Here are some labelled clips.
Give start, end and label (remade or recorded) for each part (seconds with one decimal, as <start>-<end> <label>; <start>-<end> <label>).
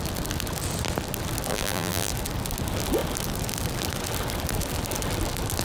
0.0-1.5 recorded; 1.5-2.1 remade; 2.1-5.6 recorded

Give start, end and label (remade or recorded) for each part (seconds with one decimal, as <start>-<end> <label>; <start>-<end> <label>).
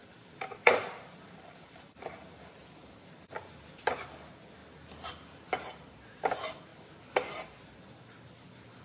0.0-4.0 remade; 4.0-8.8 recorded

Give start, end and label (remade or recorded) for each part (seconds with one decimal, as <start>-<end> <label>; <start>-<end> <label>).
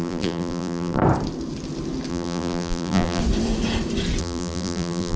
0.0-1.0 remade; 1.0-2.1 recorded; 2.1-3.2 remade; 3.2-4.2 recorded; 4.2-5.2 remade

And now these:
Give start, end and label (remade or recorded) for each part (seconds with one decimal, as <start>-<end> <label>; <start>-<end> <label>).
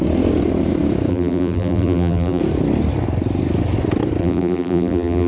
0.0-1.1 recorded; 1.1-2.4 remade; 2.4-4.2 recorded; 4.2-5.3 remade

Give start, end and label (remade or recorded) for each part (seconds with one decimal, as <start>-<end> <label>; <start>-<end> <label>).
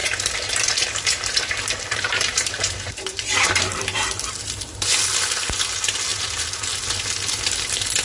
0.0-4.8 remade; 4.8-8.0 recorded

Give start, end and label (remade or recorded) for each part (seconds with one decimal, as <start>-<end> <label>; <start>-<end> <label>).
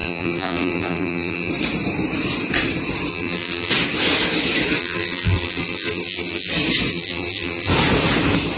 0.0-1.5 remade; 1.5-3.1 recorded; 3.1-3.7 remade; 3.7-4.8 recorded; 4.8-6.5 remade; 6.5-6.9 recorded; 6.9-7.7 remade; 7.7-8.6 recorded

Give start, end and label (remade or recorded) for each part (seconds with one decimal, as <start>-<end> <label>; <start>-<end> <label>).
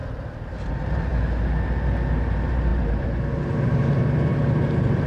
0.0-0.7 recorded; 0.7-1.1 remade; 1.1-2.1 recorded; 2.1-5.1 remade